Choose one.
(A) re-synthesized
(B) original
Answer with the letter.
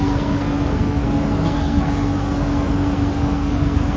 A